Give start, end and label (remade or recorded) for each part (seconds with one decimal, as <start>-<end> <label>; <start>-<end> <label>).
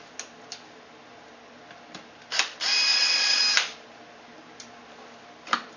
0.0-2.9 recorded; 2.9-3.4 remade; 3.4-5.8 recorded